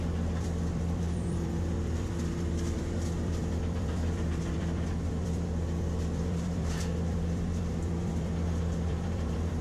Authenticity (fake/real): fake